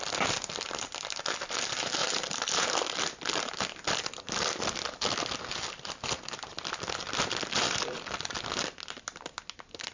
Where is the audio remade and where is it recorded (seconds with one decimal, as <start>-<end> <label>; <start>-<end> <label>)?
0.0-9.9 recorded